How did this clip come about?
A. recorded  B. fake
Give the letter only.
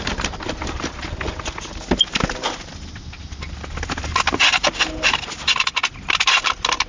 A